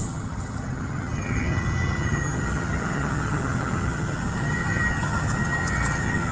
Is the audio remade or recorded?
remade